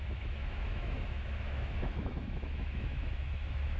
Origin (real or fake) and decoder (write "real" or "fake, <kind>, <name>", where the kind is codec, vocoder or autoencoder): fake, autoencoder, DAC-VAE